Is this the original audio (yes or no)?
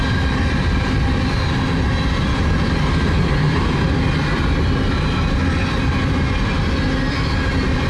yes